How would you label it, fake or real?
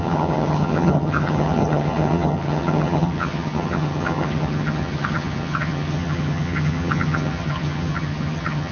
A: fake